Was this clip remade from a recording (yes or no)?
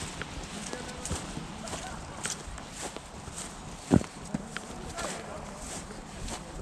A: no